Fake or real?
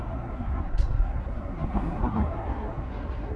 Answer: fake